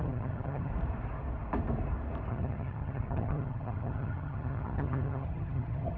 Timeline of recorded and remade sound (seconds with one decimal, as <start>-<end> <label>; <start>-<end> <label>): 0.0-0.7 remade; 0.7-2.3 recorded; 2.3-6.0 remade